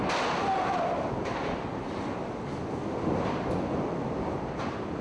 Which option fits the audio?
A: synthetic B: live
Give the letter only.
B